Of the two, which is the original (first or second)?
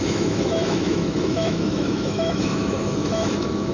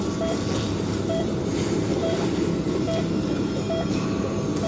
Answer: second